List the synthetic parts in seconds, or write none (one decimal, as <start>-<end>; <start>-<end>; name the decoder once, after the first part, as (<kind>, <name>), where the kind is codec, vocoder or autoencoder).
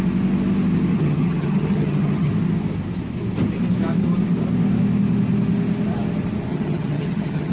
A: 0.9-2.3 (vocoder, HiFi-GAN); 6.5-7.5